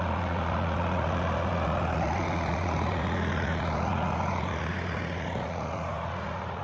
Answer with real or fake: fake